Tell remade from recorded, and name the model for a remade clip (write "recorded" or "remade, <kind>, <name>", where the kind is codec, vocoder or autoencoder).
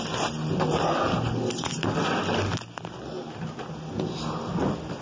recorded